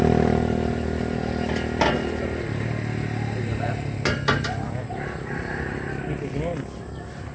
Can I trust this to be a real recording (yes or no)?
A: yes